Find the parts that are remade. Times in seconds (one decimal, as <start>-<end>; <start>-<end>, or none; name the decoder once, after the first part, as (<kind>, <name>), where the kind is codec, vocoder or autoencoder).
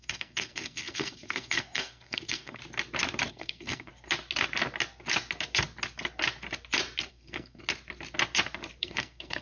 0.0-2.6 (codec, SNAC); 3.3-3.9; 7.1-7.6; 8.8-9.4